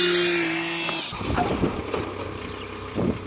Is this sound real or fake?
real